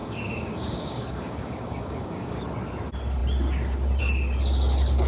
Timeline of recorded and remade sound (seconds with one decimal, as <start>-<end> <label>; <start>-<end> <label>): 0.0-2.4 remade; 2.4-5.1 recorded